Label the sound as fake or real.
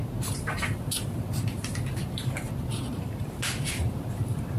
fake